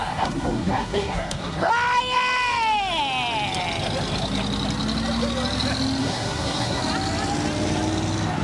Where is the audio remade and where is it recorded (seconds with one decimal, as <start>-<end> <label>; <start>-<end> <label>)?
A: 0.0-1.7 remade; 1.7-6.0 recorded; 6.0-6.8 remade; 6.8-8.4 recorded